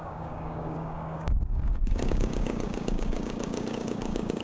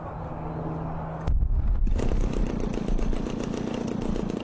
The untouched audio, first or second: second